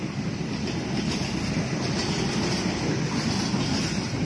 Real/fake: real